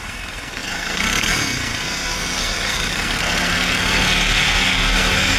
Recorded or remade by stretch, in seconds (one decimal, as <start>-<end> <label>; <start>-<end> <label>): 0.0-5.4 remade